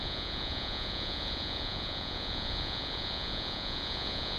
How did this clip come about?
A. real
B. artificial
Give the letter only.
B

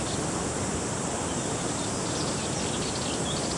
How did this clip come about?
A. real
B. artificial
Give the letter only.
A